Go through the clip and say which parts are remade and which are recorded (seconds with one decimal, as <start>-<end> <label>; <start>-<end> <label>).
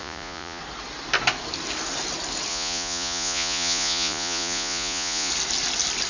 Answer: 0.0-0.6 remade; 0.6-2.5 recorded; 2.5-5.3 remade; 5.3-6.1 recorded